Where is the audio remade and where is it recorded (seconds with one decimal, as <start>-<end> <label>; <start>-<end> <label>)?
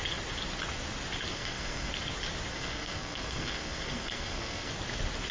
0.0-1.3 recorded; 1.3-1.9 remade; 1.9-2.5 recorded; 2.5-4.7 remade; 4.7-5.3 recorded